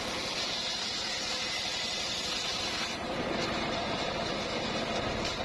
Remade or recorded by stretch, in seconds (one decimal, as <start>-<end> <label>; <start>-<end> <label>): 0.0-5.4 recorded